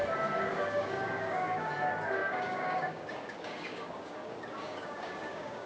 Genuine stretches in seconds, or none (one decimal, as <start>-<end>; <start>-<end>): 0.0-0.5; 1.7-2.2